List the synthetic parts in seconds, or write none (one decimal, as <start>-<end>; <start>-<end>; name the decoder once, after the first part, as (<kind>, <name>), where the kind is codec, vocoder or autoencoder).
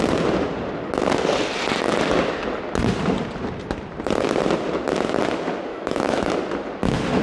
5.7-6.3 (autoencoder, DAC-VAE)